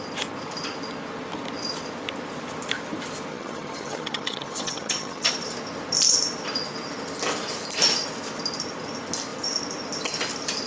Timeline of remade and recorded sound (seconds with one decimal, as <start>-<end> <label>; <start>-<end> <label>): 0.0-3.3 recorded; 3.3-5.3 remade; 5.3-10.7 recorded